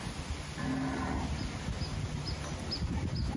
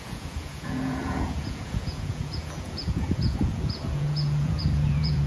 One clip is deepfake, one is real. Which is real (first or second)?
first